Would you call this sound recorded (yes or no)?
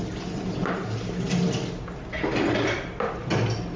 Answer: yes